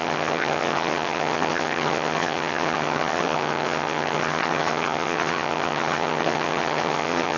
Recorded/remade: remade